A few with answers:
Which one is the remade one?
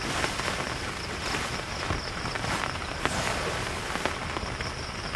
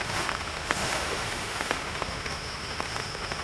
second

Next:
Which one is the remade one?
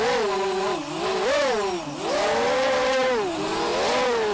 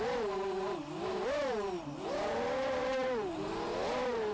second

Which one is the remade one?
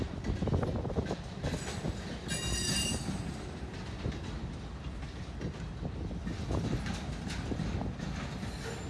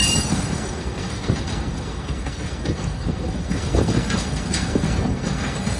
second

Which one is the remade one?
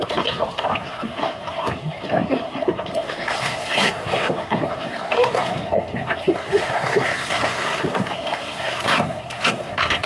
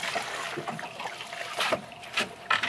first